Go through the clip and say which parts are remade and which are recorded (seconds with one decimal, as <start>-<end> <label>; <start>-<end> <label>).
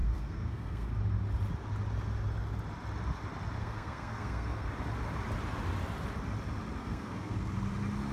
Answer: 0.0-1.0 remade; 1.0-3.6 recorded; 3.6-4.7 remade; 4.7-6.8 recorded; 6.8-7.5 remade; 7.5-8.1 recorded